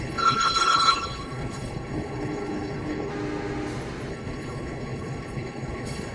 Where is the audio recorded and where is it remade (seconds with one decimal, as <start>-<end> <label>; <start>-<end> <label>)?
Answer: 0.0-3.1 remade; 3.1-4.1 recorded; 4.1-6.1 remade